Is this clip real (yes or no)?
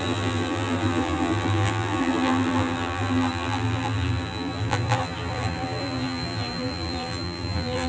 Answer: no